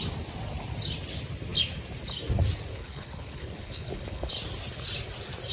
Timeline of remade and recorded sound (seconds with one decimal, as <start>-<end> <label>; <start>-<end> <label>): 0.0-2.7 recorded; 2.7-4.3 remade; 4.3-5.5 recorded